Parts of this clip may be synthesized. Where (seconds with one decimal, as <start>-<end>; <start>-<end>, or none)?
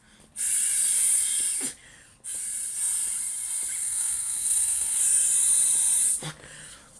3.8-5.0